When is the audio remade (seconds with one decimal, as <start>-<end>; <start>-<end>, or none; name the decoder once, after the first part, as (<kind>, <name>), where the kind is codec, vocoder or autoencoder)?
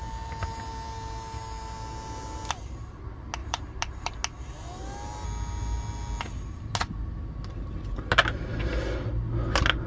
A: 3.4-4.1 (vocoder, BigVGAN v2); 7.5-8.1